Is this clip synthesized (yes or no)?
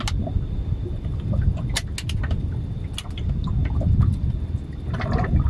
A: no